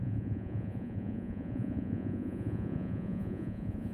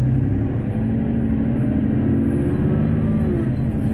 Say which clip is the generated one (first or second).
first